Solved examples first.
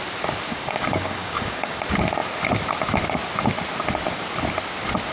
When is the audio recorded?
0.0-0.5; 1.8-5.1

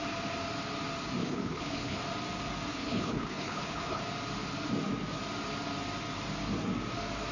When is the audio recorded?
0.0-1.2; 2.0-2.7; 4.0-7.3

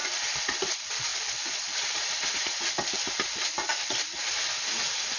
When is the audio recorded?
0.7-1.1; 4.2-5.2

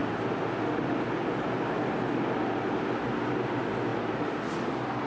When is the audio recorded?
0.0-5.1

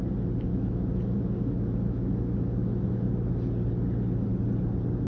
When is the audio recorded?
0.0-0.5; 3.3-5.1

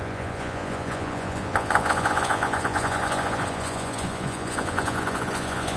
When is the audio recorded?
none

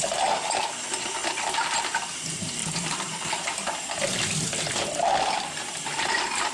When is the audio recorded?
1.2-1.8